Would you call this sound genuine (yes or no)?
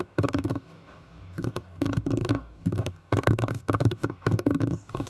no